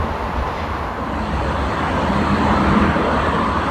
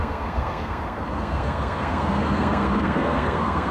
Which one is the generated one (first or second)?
second